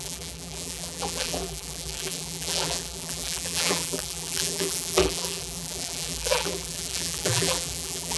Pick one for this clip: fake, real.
fake